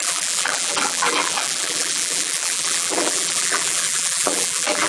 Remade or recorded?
remade